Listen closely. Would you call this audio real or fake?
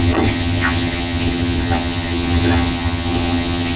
fake